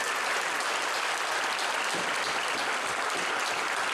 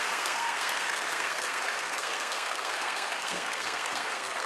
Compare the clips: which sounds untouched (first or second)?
first